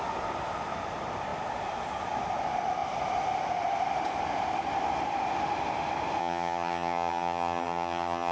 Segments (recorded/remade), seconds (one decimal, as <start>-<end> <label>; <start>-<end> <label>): 0.0-6.2 recorded; 6.2-8.3 remade